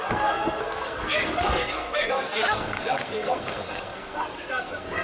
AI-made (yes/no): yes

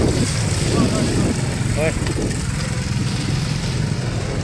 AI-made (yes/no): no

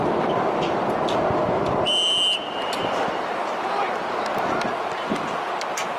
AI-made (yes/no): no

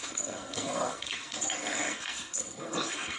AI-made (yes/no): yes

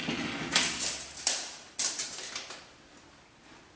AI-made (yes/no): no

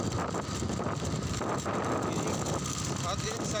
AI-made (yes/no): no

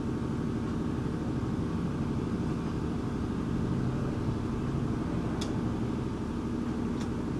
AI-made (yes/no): no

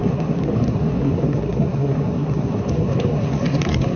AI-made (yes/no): yes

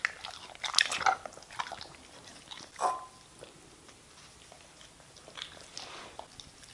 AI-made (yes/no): no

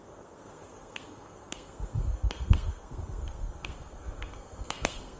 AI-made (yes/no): yes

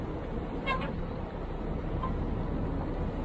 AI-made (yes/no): no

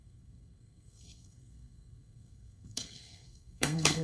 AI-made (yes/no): yes